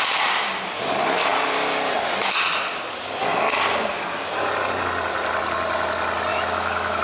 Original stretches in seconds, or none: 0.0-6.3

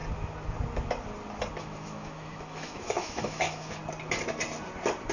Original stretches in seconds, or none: 0.0-1.6; 3.8-5.1

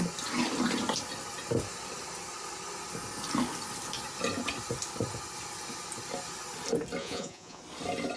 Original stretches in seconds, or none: 0.0-7.0; 7.6-8.2

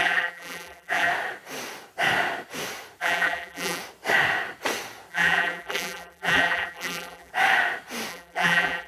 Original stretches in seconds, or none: 1.1-3.0; 3.8-5.1; 7.3-8.1

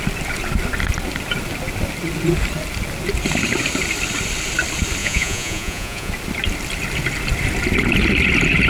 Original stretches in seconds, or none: 0.0-5.0; 6.1-8.7

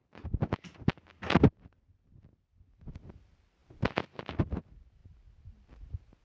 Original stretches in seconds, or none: 0.0-6.2